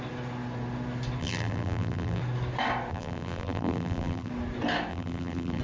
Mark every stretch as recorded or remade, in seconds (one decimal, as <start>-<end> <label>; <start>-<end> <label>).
0.0-1.2 recorded; 1.2-2.2 remade; 2.2-2.9 recorded; 2.9-4.3 remade; 4.3-4.9 recorded; 4.9-5.6 remade